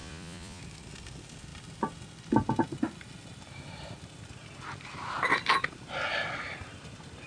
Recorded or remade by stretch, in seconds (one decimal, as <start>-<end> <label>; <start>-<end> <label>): 0.0-0.6 remade; 0.6-7.3 recorded